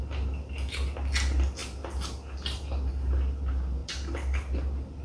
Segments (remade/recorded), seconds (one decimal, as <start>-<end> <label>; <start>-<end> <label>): 0.0-5.0 recorded

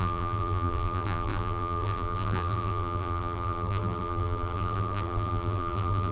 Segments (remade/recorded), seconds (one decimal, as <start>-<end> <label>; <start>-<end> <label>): 0.0-6.1 remade

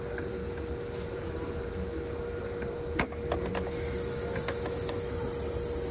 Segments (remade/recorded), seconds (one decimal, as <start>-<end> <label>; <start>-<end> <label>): 0.0-1.7 recorded; 1.7-2.4 remade; 2.4-3.5 recorded; 3.5-5.1 remade; 5.1-5.9 recorded